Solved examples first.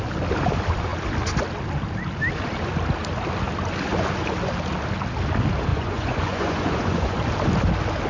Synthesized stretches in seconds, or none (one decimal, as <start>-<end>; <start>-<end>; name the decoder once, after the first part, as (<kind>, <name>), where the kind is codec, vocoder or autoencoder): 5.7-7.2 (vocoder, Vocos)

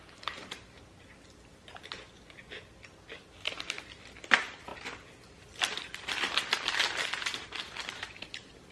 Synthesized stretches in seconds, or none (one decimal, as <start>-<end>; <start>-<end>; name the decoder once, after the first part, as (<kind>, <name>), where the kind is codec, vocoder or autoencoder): none

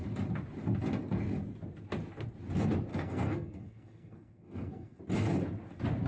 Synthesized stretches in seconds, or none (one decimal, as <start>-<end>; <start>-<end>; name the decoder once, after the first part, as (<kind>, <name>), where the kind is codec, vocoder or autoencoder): 2.9-5.0 (codec, SNAC)

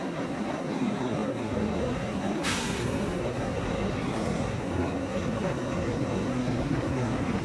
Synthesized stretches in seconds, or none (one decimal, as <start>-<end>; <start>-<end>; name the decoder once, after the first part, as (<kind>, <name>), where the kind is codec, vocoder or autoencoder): 0.0-7.4 (codec, SNAC)

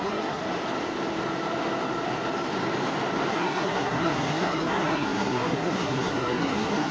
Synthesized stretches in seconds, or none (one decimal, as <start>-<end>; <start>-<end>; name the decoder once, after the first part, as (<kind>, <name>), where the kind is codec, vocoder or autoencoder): 0.0-0.4 (codec, SNAC); 3.3-6.9

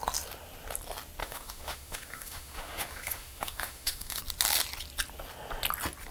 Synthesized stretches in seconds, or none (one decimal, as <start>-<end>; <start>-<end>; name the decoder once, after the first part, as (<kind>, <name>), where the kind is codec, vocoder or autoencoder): 1.2-4.2 (autoencoder, DAC-VAE)

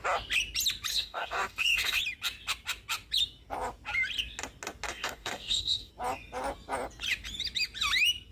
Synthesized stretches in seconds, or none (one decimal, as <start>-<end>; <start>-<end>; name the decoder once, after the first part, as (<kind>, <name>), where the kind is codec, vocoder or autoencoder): 0.9-2.0 (codec, DAC); 4.9-5.9

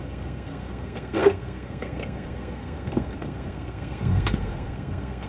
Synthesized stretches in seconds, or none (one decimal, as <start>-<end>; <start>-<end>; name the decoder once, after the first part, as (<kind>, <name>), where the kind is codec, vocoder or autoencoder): 0.0-5.3 (codec, SNAC)